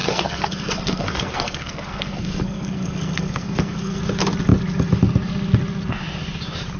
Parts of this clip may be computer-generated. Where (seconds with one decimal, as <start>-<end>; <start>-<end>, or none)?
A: 0.0-4.0